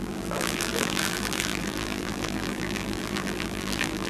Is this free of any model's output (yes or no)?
no